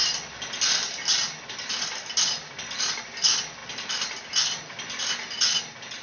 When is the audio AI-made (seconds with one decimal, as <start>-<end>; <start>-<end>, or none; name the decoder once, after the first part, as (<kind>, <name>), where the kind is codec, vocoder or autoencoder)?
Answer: none